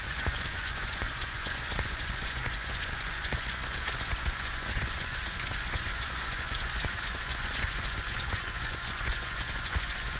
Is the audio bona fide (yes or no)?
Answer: no